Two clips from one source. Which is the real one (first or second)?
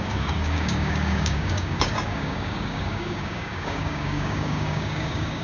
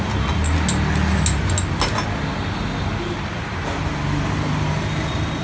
second